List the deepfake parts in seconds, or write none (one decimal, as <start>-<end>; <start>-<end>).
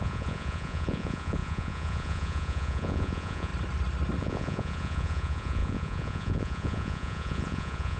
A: 0.0-3.5; 4.2-8.0